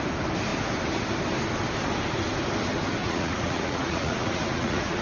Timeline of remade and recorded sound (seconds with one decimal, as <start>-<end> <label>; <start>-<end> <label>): 0.0-3.0 recorded; 3.0-5.0 remade